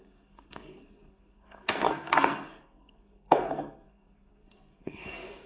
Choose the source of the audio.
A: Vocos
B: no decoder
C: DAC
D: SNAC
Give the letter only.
D